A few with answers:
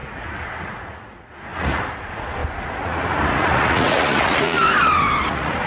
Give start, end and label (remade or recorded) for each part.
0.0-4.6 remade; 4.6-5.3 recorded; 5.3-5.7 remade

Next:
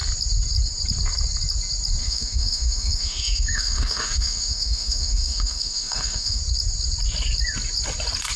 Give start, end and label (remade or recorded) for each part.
0.0-2.0 recorded; 2.0-6.4 remade; 6.4-8.4 recorded

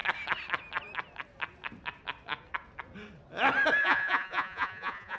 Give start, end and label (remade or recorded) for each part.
0.0-3.8 recorded; 3.8-5.2 remade